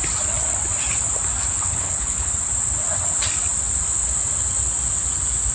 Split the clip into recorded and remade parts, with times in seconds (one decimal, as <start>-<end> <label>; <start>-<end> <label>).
0.0-1.5 recorded; 1.5-2.3 remade; 2.3-5.5 recorded